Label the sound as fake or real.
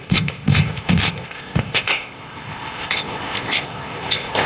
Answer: fake